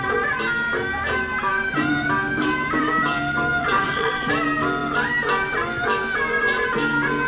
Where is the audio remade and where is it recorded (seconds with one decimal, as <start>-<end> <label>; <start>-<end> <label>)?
0.0-3.6 recorded; 3.6-4.3 remade; 4.3-7.3 recorded